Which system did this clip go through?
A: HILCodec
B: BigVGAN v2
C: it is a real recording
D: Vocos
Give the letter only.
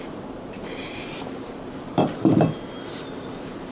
B